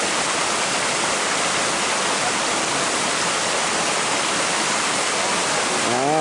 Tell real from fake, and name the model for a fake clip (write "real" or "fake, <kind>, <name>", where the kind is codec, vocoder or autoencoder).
real